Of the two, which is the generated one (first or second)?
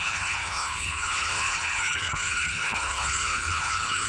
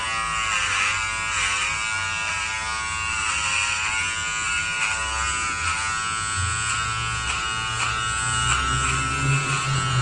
first